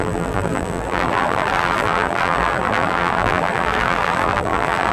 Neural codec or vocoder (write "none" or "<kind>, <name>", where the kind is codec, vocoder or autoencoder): vocoder, BigVGAN v2